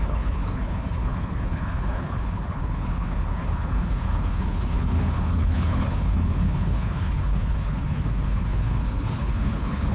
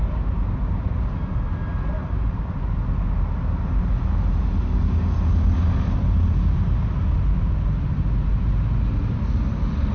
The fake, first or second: first